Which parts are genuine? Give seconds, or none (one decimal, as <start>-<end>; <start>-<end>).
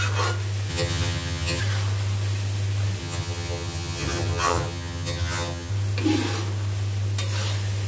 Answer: 0.0-0.7; 1.6-3.0; 5.7-7.9